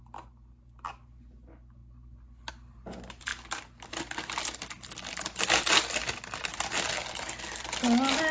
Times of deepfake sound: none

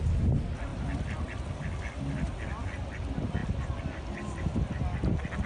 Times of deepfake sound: none